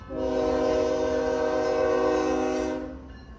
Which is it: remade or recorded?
recorded